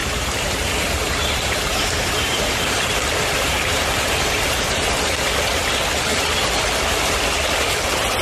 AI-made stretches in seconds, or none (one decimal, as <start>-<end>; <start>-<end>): 0.0-4.9